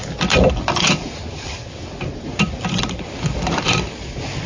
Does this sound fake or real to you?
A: real